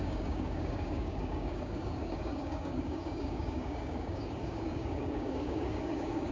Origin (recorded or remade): remade